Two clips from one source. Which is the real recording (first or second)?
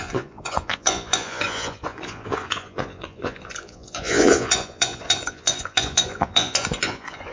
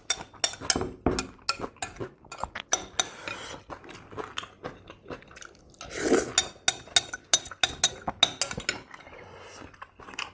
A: second